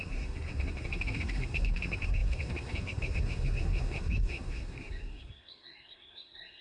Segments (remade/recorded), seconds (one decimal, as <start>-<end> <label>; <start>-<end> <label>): 0.0-6.6 remade